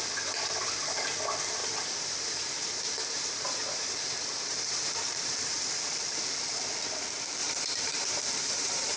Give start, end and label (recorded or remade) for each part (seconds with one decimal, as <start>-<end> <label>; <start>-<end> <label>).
0.0-1.6 recorded; 1.6-5.7 remade; 5.7-7.4 recorded; 7.4-9.0 remade